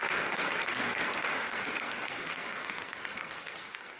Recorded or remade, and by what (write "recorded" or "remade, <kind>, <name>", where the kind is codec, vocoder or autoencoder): remade, codec, SNAC